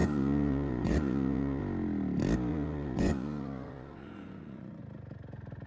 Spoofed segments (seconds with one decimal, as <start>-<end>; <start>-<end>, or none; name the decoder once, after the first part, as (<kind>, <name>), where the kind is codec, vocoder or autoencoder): 0.0-1.6 (vocoder, Vocos); 2.5-4.8